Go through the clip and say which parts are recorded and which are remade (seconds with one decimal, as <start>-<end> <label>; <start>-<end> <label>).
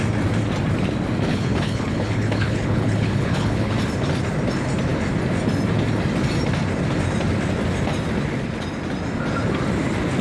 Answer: 0.0-1.3 recorded; 1.3-3.7 remade; 3.7-10.2 recorded